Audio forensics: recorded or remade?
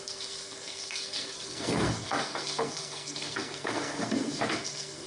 remade